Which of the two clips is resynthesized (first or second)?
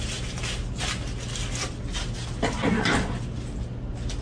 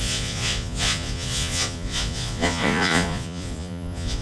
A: second